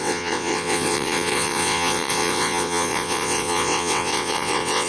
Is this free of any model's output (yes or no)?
no